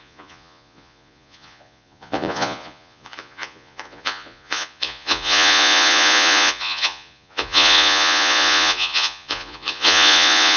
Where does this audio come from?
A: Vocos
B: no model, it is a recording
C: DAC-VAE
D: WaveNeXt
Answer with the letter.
A